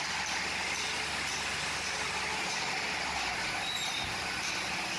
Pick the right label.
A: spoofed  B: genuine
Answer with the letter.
B